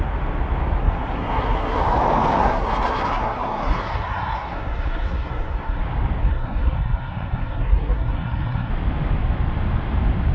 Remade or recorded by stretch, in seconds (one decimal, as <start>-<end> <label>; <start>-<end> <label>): 0.0-0.8 recorded; 0.8-1.8 remade; 1.8-2.4 recorded; 2.4-5.8 remade; 5.8-6.2 recorded; 6.2-8.7 remade; 8.7-10.3 recorded